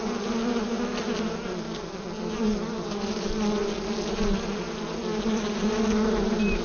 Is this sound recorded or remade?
recorded